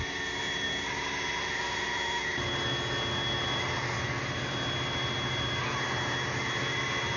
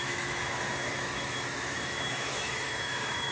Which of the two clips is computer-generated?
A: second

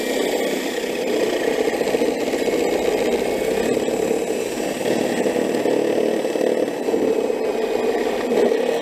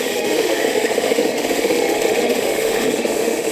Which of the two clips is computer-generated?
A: second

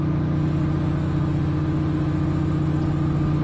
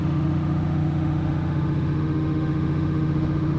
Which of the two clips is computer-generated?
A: second